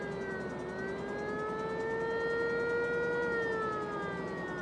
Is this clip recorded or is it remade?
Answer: recorded